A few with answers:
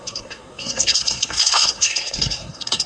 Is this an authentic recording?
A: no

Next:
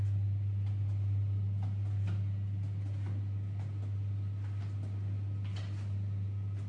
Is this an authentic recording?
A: yes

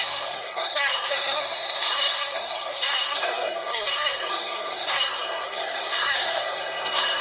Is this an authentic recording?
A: no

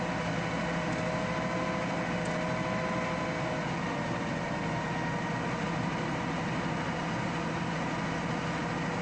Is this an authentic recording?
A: yes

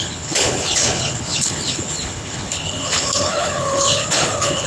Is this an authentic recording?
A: no